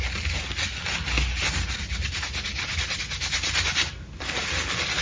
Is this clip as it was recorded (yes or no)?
yes